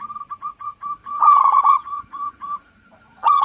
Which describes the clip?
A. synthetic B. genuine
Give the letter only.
A